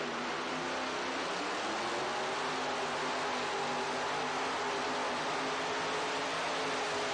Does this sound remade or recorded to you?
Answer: recorded